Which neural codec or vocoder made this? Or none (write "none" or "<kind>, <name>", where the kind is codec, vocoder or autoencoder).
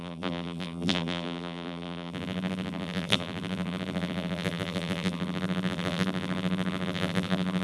vocoder, BigVGAN v2